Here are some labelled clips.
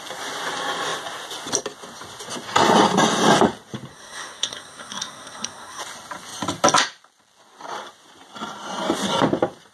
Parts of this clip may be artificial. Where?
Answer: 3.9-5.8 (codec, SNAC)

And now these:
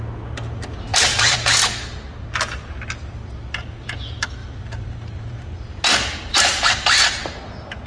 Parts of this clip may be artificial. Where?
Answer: 0.9-1.5 (vocoder, BigVGAN v2); 4.4-6.7

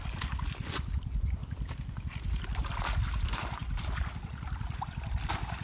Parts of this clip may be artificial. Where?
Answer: none

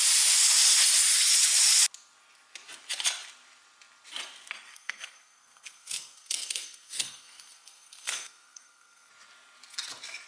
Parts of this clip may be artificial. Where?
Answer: 4.7-9.1 (codec, SNAC)

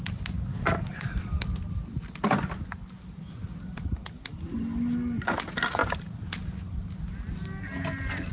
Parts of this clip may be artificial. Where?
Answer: none

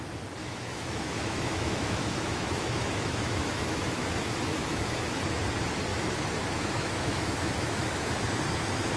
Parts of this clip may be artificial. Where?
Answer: 0.4-5.1 (autoencoder, DAC-VAE); 5.9-8.1